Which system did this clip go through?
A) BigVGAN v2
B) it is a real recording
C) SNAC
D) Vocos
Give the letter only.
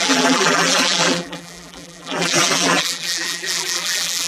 A